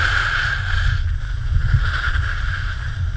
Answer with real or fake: real